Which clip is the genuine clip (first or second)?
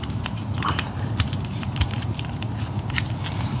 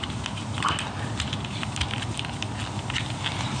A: second